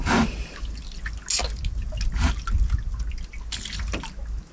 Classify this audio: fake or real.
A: real